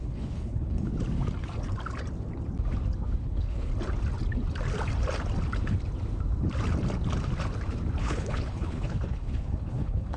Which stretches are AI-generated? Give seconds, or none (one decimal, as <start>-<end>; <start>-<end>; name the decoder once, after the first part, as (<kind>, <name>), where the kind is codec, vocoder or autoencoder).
0.0-0.9 (codec, HILCodec); 3.2-3.7; 8.0-10.2